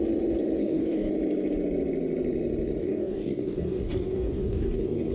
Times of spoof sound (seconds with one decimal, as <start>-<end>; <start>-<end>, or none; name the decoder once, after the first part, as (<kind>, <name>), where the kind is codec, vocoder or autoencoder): 0.6-1.1 (codec, DAC); 2.8-5.1